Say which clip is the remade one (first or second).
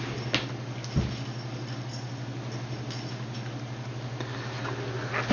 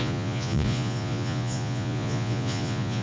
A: second